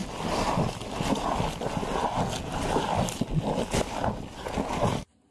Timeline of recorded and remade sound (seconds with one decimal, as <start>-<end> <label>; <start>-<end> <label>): 0.0-5.3 recorded